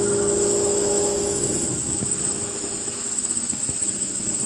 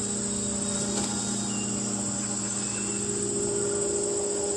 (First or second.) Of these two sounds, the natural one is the second